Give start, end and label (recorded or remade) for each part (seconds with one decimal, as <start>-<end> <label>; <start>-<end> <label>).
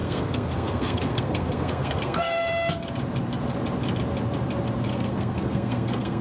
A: 0.0-2.5 remade; 2.5-4.9 recorded; 4.9-6.2 remade